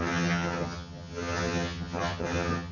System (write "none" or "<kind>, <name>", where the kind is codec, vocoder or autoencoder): vocoder, HiFi-GAN